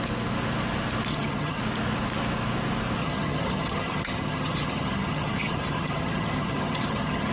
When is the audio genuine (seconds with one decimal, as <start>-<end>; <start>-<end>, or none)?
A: 0.0-1.1; 1.6-3.0